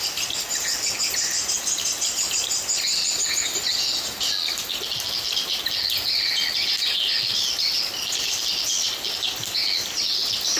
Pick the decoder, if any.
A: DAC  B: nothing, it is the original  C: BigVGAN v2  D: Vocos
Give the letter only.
B